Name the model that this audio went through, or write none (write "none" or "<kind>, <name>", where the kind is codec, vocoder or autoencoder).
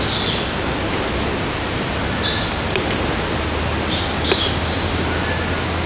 none